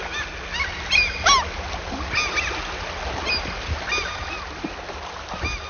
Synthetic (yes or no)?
no